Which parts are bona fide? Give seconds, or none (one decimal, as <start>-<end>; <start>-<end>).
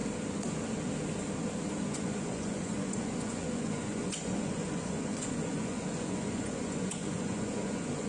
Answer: 0.0-1.9